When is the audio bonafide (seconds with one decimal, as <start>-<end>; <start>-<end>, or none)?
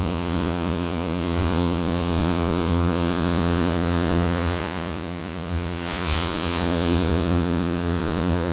none